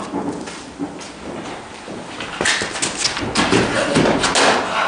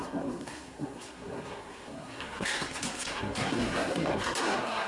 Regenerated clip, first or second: second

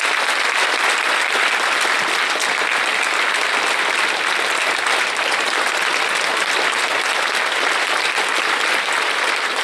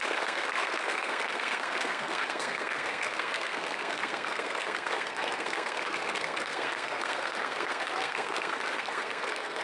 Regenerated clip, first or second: second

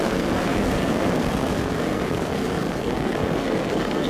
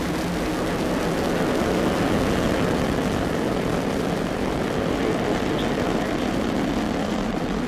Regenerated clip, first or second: first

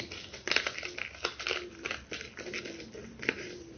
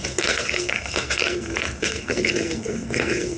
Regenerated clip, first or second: second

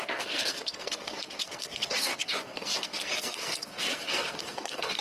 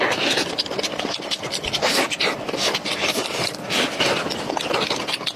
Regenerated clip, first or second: first